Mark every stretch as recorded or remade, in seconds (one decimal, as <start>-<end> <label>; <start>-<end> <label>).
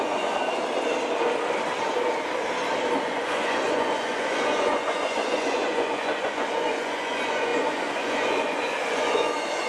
0.0-0.4 remade; 0.4-3.0 recorded; 3.0-9.7 remade